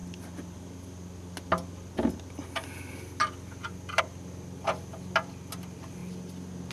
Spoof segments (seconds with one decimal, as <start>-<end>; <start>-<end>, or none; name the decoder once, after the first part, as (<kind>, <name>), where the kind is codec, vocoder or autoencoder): none